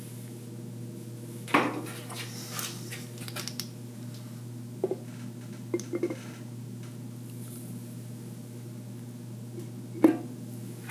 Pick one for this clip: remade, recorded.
recorded